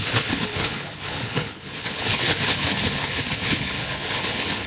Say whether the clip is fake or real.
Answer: fake